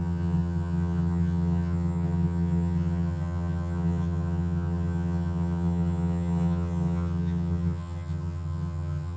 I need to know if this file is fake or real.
fake